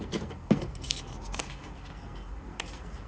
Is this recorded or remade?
remade